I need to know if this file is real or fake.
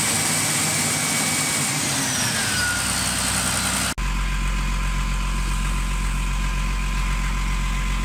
real